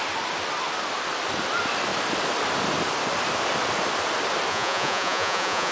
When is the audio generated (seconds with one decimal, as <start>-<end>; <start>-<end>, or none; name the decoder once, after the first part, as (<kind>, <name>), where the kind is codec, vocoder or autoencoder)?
4.5-5.7 (vocoder, Vocos)